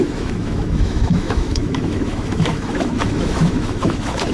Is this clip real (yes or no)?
no